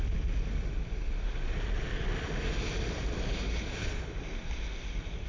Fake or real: real